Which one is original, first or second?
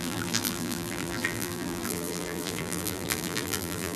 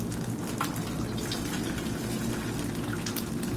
second